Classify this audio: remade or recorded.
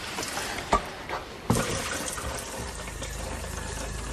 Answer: recorded